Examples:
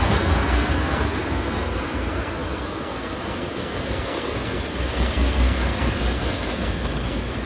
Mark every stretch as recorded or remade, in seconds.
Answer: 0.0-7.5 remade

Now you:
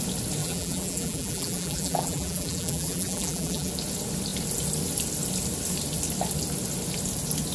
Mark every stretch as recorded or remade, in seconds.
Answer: 0.0-0.4 recorded; 0.4-3.7 remade; 3.7-7.5 recorded